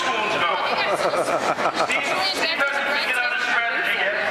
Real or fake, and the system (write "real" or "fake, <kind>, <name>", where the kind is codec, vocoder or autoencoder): real